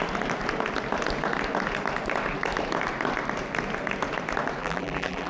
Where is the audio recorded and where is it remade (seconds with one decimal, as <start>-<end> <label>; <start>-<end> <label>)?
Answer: 0.0-4.6 recorded; 4.6-5.3 remade